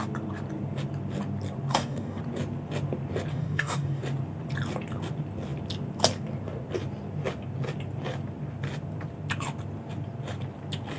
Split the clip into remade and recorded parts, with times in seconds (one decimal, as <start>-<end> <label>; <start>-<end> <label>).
0.0-1.7 recorded; 1.7-2.2 remade; 2.2-3.3 recorded; 3.3-4.0 remade; 4.0-11.0 recorded